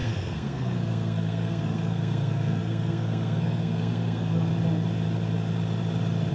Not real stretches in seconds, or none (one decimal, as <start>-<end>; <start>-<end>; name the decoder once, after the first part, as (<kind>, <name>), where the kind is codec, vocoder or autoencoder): 0.0-4.5 (codec, SNAC)